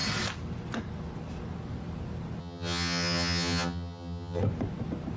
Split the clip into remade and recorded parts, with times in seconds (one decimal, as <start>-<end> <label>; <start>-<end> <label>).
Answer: 0.0-2.4 recorded; 2.4-4.4 remade; 4.4-5.2 recorded